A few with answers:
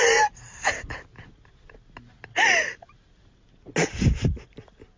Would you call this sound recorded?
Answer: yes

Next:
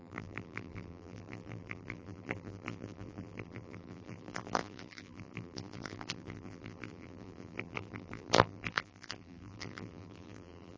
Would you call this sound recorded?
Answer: no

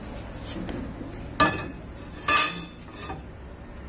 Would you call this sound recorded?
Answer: yes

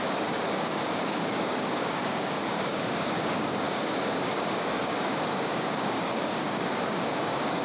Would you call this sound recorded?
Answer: no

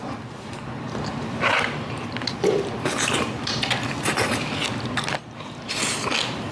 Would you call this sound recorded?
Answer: yes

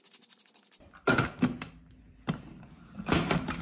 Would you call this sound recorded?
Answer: yes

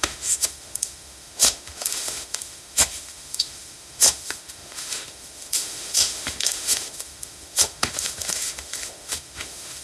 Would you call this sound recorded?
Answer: no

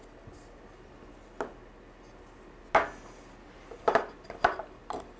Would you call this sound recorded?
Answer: yes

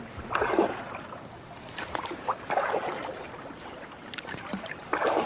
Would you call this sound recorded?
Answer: no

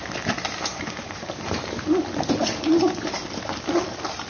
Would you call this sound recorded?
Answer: yes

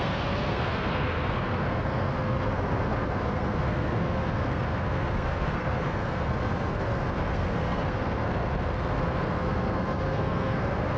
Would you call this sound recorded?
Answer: no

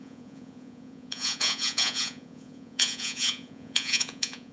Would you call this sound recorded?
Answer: no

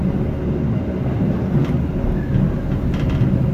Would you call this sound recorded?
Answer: yes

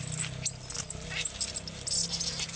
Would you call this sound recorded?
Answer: yes